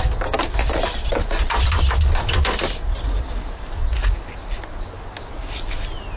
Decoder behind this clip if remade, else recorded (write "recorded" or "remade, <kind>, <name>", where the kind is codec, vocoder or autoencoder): recorded